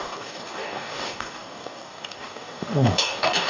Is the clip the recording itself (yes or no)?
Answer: no